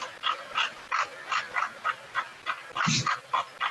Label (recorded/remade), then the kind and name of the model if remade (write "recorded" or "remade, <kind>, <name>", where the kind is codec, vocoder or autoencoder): recorded